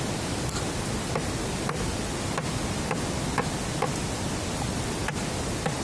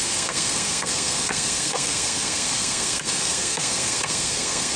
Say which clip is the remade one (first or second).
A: second